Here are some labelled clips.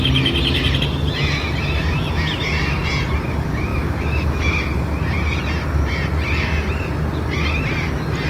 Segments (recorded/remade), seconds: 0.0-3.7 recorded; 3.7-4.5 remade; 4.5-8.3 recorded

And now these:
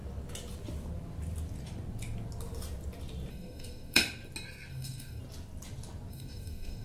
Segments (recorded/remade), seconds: 0.0-3.3 recorded; 3.3-4.0 remade; 4.0-4.7 recorded; 4.7-5.2 remade; 5.2-6.1 recorded; 6.1-6.8 remade

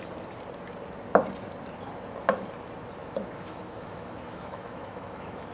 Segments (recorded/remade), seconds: 0.0-3.0 recorded; 3.0-5.5 remade

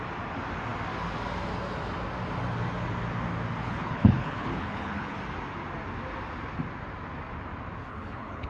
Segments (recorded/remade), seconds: 0.0-3.6 recorded; 3.6-5.2 remade; 5.2-7.9 recorded; 7.9-8.5 remade

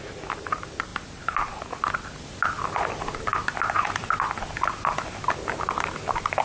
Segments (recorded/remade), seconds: 0.0-6.4 recorded

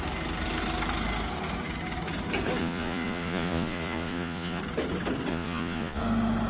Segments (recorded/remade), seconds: 0.0-2.6 recorded; 2.6-4.6 remade; 4.6-5.3 recorded; 5.3-6.0 remade; 6.0-6.5 recorded

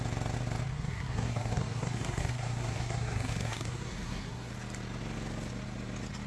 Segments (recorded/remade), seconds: 0.0-0.7 recorded; 0.7-4.5 remade; 4.5-6.3 recorded